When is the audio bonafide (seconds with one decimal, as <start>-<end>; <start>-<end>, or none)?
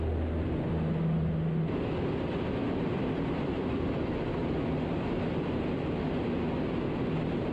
0.0-2.6; 3.8-4.4; 4.9-7.5